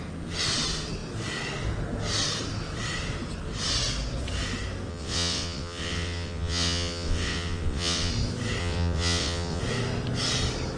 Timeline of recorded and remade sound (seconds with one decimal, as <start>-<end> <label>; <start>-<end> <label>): 0.0-4.9 recorded; 4.9-8.1 remade; 8.1-8.6 recorded; 8.6-9.6 remade; 9.6-10.8 recorded